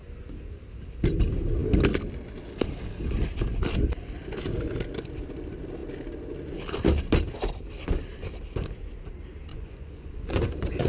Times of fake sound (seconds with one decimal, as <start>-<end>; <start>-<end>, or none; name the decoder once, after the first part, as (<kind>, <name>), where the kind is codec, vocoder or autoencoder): 9.5-10.9 (vocoder, Vocos)